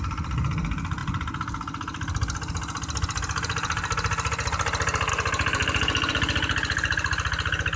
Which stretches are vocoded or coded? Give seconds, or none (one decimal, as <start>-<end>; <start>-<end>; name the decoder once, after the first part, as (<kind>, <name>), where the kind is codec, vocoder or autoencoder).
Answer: none